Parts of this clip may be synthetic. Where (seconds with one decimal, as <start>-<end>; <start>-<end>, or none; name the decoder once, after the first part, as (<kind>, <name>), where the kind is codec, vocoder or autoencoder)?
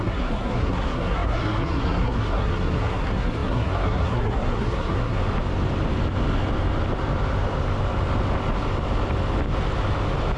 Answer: 0.0-5.2 (codec, SNAC)